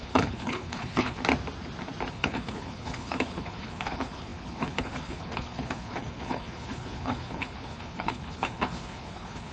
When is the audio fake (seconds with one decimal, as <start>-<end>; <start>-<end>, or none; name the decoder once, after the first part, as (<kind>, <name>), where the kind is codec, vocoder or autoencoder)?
0.0-1.2 (codec, HILCodec); 2.1-9.5